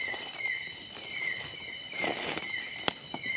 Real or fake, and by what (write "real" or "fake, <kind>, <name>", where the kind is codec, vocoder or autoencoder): real